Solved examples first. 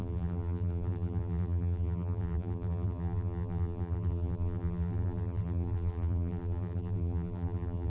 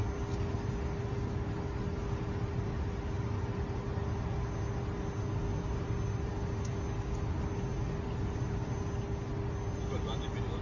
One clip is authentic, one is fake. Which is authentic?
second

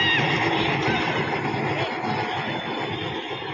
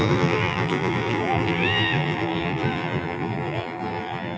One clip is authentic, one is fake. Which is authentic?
first